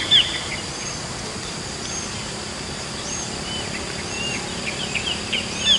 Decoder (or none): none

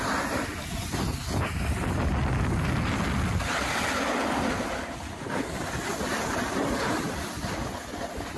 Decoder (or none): none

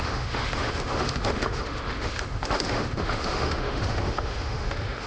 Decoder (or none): autoencoder, DAC-VAE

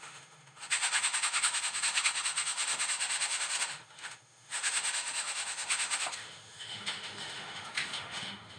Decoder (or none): autoencoder, DAC-VAE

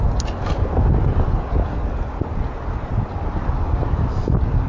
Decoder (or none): none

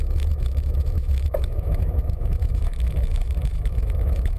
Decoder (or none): autoencoder, DAC-VAE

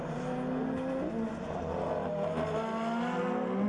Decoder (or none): none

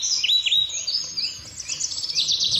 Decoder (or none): none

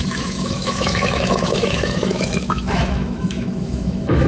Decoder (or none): autoencoder, DAC-VAE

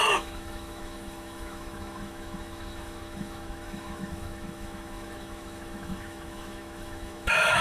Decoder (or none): autoencoder, DAC-VAE